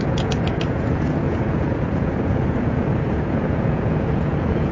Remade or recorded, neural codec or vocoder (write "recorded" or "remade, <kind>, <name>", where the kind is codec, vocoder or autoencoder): remade, vocoder, Vocos